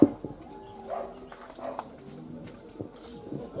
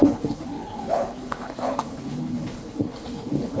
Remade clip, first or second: second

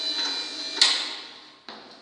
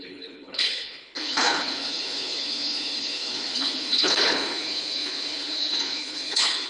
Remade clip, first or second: second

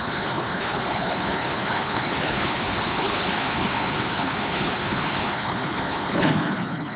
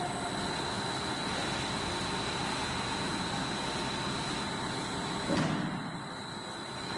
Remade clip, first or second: first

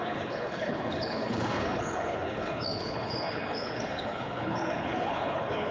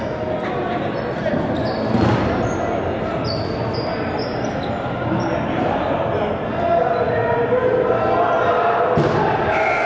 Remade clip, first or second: first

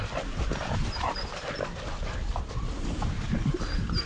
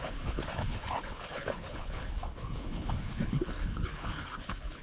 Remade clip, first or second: second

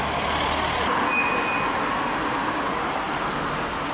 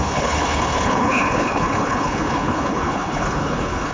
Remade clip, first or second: second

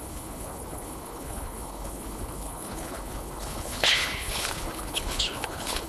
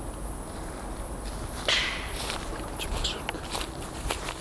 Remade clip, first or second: first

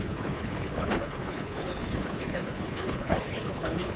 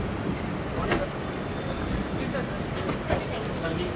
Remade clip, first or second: first